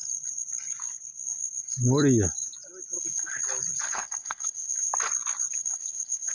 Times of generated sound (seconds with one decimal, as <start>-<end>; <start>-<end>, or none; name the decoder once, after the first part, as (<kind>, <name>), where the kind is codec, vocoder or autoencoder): 3.0-3.4 (codec, HILCodec); 3.9-4.9; 5.5-6.3